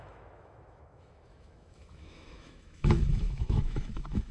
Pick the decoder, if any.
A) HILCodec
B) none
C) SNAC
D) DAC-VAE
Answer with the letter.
D